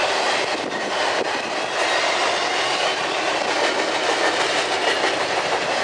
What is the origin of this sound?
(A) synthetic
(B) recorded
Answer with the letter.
B